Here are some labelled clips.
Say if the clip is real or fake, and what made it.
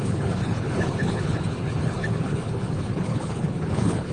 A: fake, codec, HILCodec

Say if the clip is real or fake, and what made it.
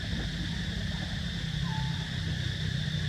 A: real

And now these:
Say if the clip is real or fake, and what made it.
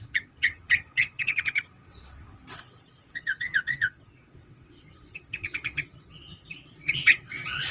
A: fake, vocoder, WaveNeXt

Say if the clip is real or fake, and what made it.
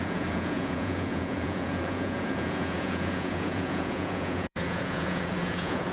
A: fake, vocoder, Vocos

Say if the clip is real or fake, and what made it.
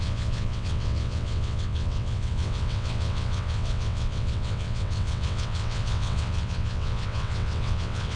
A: fake, vocoder, WaveNeXt